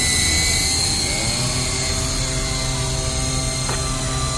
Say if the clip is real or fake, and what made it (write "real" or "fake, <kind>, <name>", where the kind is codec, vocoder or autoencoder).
real